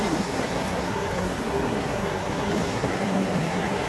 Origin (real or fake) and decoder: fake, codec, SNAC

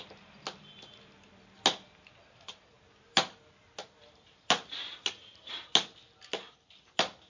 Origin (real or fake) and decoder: real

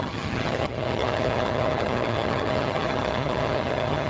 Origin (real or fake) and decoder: fake, vocoder, HiFi-GAN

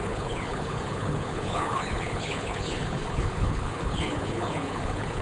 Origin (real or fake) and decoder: fake, codec, HILCodec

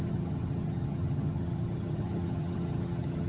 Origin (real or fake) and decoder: fake, vocoder, HiFi-GAN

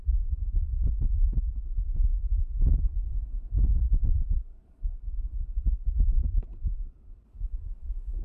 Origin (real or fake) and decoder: fake, vocoder, BigVGAN v2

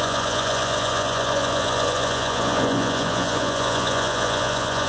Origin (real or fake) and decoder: fake, vocoder, Vocos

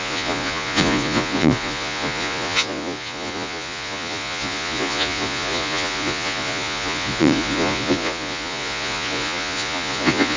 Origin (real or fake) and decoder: fake, vocoder, Vocos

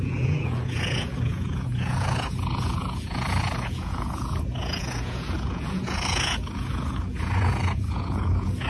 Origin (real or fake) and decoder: fake, vocoder, Vocos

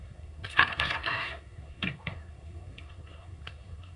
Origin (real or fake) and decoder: fake, codec, SNAC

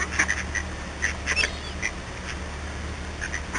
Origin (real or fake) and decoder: real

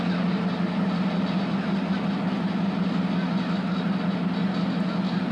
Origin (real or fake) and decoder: real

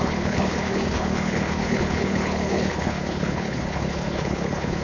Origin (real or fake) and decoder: fake, codec, HILCodec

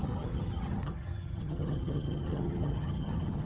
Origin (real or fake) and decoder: fake, vocoder, HiFi-GAN